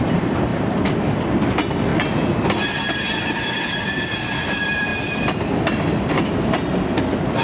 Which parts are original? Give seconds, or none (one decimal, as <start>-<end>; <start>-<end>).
0.5-1.2; 1.9-3.3; 4.9-6.4